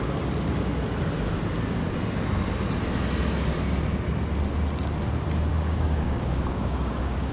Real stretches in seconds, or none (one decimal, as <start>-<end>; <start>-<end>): 0.0-5.5